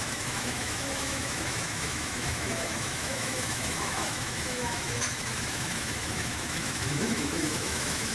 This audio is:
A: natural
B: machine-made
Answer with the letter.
B